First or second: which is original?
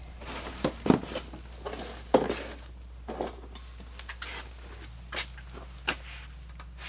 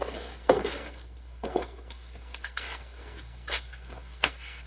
first